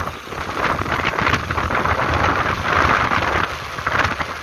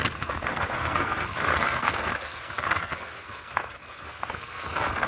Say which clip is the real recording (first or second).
first